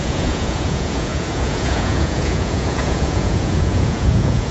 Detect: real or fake fake